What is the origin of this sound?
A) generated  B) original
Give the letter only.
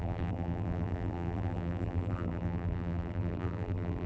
A